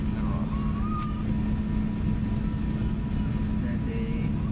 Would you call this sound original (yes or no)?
yes